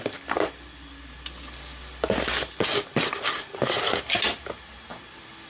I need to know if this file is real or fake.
real